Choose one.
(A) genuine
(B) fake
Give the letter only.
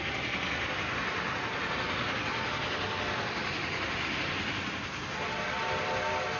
A